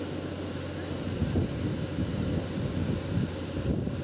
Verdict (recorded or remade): recorded